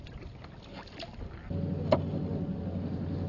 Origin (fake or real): real